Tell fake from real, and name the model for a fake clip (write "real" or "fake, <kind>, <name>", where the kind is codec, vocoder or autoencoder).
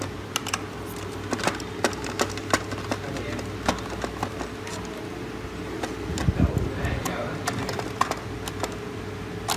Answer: real